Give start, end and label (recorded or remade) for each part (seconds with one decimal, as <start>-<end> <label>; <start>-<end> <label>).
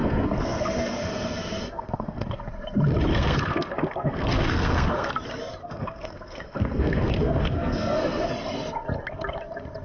0.0-2.4 remade; 2.4-3.1 recorded; 3.1-5.1 remade; 5.1-5.6 recorded; 5.6-8.3 remade; 8.3-9.8 recorded